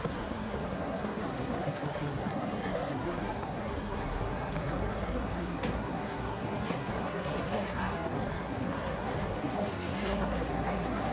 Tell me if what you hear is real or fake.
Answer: fake